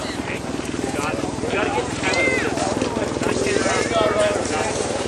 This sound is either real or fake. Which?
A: fake